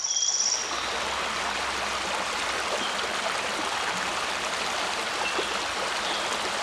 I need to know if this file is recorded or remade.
recorded